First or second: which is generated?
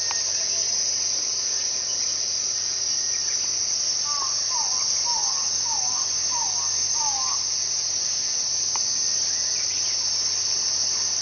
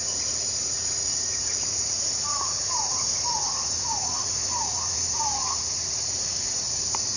second